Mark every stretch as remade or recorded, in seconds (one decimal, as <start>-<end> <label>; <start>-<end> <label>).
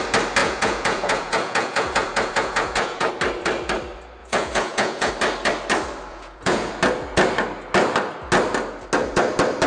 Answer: 0.0-0.4 recorded; 0.4-3.1 remade; 3.1-4.2 recorded; 4.2-5.1 remade; 5.1-6.1 recorded; 6.1-6.7 remade; 6.7-9.7 recorded